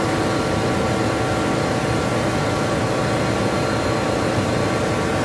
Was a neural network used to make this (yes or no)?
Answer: no